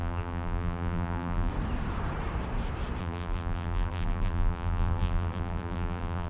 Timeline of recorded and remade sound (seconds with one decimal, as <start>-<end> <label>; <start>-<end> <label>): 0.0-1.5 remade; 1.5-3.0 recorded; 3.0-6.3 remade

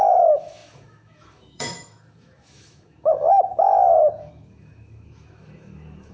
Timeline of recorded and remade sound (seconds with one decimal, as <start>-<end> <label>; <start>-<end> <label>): 0.0-6.1 remade

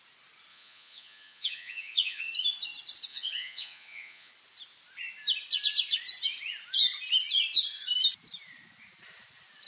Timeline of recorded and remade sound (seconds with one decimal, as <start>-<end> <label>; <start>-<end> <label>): 0.0-0.5 recorded; 0.5-2.3 remade; 2.3-3.1 recorded; 3.1-4.3 remade; 4.3-9.7 recorded

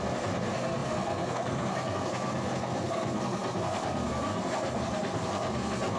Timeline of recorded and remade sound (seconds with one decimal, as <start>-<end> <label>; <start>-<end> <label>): 0.0-6.0 remade

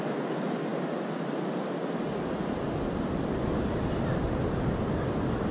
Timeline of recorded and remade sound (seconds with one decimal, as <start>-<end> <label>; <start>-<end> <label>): 0.0-5.5 recorded